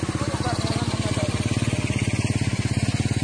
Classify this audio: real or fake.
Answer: real